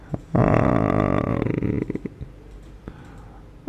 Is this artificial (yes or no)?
no